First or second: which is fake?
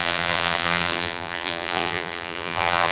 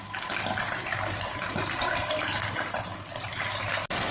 first